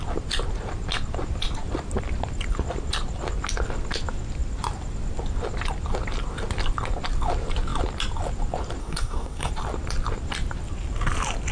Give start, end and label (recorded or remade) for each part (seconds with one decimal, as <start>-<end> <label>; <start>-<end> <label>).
0.0-8.8 recorded; 8.8-9.5 remade; 9.5-11.5 recorded

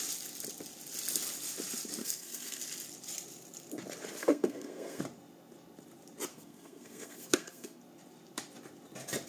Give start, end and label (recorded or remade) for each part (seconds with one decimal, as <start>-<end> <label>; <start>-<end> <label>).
0.0-2.0 recorded; 2.0-2.6 remade; 2.6-4.2 recorded; 4.2-5.0 remade; 5.0-6.3 recorded; 6.3-7.8 remade; 7.8-9.3 recorded

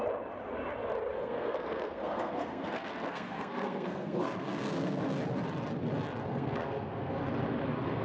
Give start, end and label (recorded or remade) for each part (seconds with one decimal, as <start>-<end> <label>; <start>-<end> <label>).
0.0-1.2 recorded; 1.2-5.0 remade; 5.0-6.3 recorded; 6.3-7.1 remade; 7.1-8.0 recorded

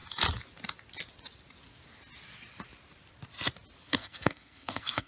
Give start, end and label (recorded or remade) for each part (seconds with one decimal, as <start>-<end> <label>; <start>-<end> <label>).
0.0-3.9 recorded; 3.9-5.1 remade

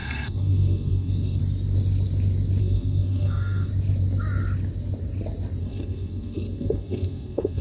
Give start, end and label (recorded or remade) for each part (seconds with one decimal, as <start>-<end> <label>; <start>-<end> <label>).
0.0-1.4 remade; 1.4-2.6 recorded; 2.6-3.7 remade; 3.7-5.6 recorded; 5.6-7.6 remade